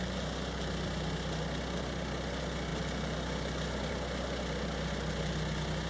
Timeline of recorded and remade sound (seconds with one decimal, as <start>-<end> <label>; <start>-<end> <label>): 0.0-5.9 recorded